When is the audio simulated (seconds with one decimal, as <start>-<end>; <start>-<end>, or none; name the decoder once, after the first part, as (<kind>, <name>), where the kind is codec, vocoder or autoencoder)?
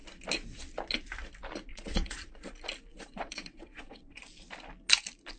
1.7-2.5 (vocoder, Vocos); 2.9-4.2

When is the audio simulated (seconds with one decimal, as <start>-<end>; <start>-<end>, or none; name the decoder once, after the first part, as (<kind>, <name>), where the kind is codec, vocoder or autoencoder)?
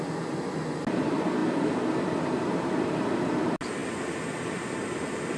none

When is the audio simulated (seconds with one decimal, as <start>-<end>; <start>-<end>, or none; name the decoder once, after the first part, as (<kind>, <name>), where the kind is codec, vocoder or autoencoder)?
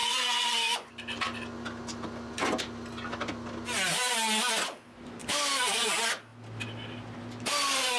0.0-0.9 (vocoder, Vocos)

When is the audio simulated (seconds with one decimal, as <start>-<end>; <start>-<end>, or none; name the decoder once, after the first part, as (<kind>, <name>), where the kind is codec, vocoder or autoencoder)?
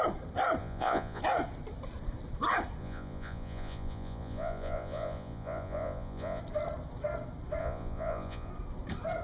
0.6-1.2 (vocoder, Vocos); 2.8-6.4; 7.6-8.5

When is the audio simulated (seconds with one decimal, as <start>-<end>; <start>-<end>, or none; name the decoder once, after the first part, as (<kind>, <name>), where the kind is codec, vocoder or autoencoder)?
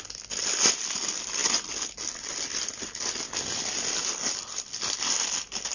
none